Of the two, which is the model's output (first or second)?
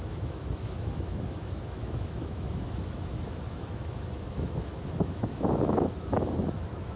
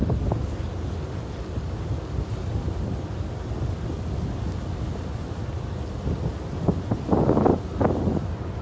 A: first